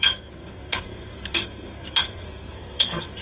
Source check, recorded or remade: remade